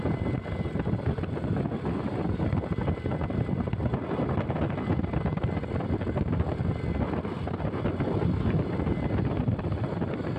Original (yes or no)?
yes